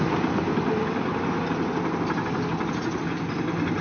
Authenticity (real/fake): real